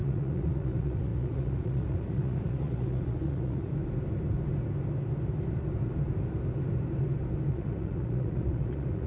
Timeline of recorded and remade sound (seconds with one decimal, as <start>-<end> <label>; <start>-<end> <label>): 0.0-3.7 remade; 3.7-7.5 recorded; 7.5-9.1 remade